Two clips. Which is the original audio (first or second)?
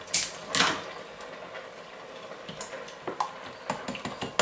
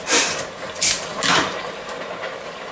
first